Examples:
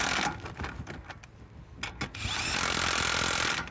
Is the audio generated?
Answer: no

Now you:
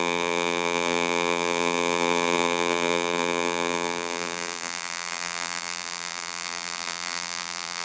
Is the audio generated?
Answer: yes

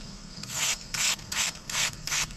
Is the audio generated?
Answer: yes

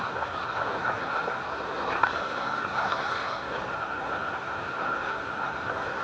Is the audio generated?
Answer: yes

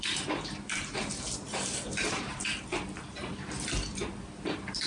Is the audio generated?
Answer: yes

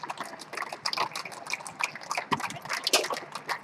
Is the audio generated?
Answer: no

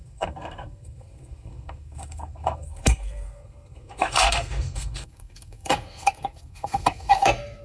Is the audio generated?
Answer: yes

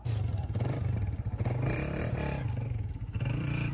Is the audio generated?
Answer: yes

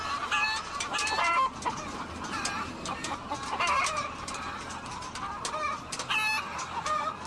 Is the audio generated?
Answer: no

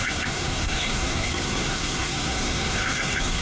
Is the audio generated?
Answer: yes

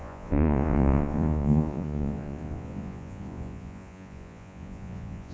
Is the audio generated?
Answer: yes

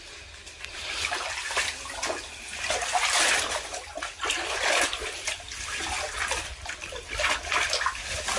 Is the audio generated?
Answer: no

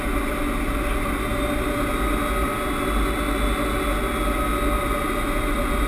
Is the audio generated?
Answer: no